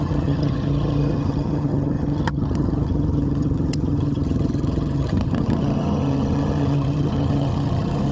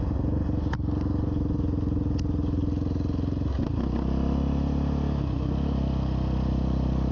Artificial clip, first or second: first